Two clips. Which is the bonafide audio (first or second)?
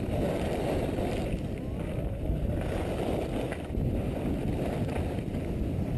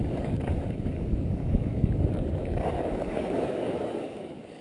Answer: first